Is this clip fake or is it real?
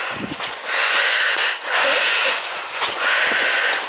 fake